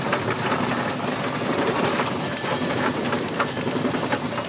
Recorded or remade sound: remade